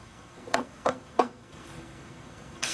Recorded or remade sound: remade